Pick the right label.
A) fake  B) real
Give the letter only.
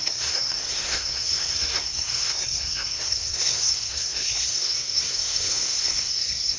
A